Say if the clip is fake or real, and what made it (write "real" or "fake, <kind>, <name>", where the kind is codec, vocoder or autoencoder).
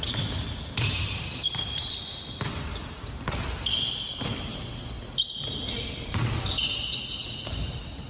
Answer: real